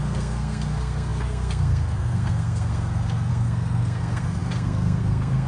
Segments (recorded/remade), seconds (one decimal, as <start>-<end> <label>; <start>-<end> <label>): 0.0-5.5 remade